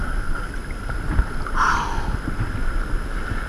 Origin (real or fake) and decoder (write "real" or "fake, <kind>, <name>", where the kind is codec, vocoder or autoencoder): real